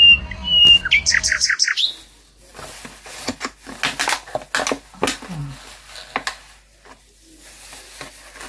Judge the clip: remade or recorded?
recorded